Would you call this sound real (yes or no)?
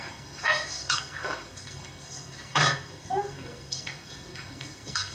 no